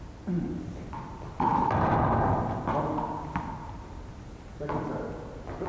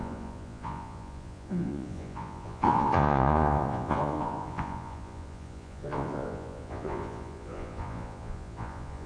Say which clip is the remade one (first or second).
second